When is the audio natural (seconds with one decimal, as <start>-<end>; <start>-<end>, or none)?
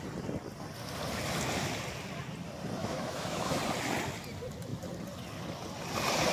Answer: 0.0-2.8; 3.6-6.3